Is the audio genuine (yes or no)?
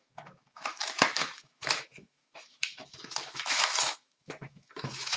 no